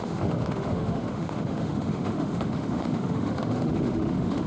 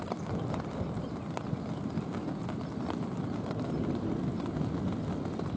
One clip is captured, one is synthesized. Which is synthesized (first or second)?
first